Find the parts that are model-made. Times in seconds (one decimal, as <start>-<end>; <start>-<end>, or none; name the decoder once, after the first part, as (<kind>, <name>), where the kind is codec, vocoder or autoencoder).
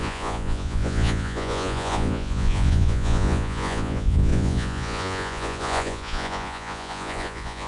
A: 0.0-7.7 (vocoder, Vocos)